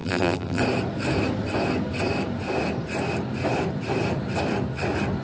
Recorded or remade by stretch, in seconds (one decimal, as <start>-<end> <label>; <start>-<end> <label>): 0.0-0.6 remade; 0.6-5.2 recorded